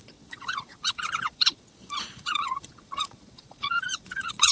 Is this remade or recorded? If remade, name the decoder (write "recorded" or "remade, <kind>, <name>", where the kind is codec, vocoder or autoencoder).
remade, vocoder, Vocos